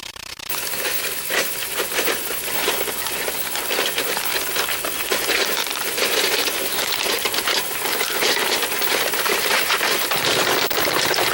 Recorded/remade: remade